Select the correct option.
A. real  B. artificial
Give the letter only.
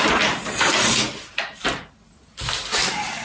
A